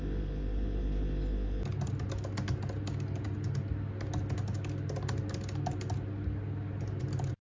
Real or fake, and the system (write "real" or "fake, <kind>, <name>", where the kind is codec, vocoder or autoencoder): real